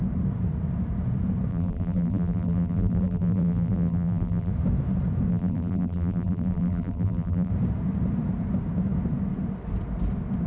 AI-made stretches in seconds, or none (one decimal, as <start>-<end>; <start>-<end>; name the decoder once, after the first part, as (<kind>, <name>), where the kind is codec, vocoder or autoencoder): 1.5-4.5 (vocoder, BigVGAN v2); 5.3-7.5

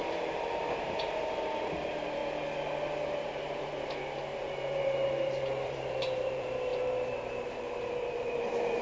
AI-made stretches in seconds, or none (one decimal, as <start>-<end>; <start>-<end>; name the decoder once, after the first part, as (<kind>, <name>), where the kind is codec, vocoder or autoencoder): 0.0-2.2 (vocoder, BigVGAN v2); 3.3-8.8

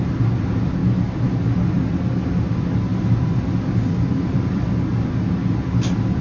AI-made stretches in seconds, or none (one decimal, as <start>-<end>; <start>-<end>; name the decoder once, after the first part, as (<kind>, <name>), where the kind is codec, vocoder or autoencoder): 2.9-4.7 (vocoder, BigVGAN v2)

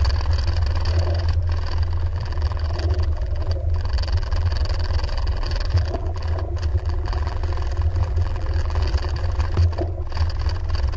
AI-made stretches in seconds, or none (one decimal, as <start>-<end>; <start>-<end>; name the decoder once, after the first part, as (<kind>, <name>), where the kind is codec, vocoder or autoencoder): 2.1-6.3 (vocoder, BigVGAN v2); 6.7-7.4; 8.0-9.2